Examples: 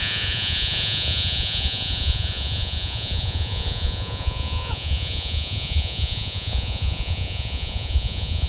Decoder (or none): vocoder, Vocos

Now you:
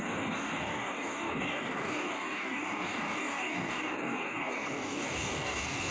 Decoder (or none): codec, DAC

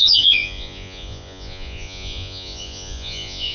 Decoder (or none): vocoder, Vocos